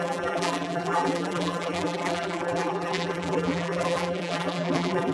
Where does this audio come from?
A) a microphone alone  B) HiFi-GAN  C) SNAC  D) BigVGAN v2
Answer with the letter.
D